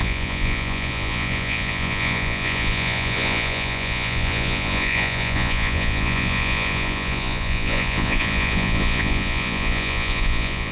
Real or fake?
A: fake